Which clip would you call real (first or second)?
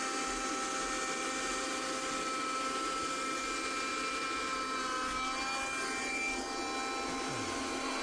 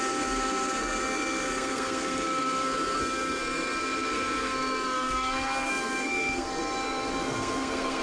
first